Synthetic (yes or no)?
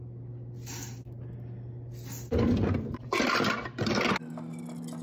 no